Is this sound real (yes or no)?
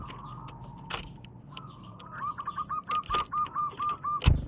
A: yes